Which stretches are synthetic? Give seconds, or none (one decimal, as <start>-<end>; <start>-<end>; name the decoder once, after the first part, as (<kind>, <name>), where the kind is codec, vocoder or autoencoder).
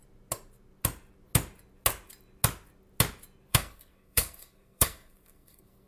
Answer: 3.5-5.9 (codec, SNAC)